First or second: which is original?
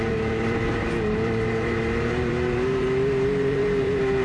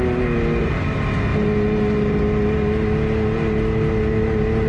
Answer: second